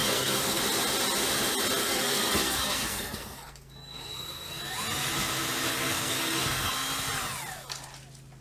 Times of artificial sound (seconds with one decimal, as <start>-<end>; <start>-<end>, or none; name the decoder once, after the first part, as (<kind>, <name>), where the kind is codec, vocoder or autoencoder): 0.0-0.6 (codec, SNAC); 1.8-4.6; 5.7-6.7